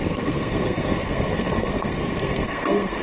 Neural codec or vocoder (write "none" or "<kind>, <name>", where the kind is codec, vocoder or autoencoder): codec, SNAC